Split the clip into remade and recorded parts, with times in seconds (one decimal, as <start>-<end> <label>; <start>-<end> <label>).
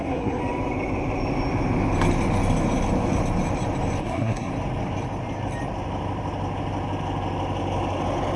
0.0-0.4 remade; 0.4-4.0 recorded; 4.0-4.5 remade; 4.5-8.4 recorded